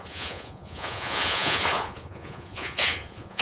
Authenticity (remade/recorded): remade